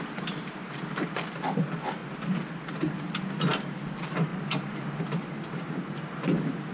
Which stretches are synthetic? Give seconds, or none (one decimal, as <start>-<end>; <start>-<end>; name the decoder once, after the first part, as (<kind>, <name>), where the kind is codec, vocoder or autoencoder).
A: none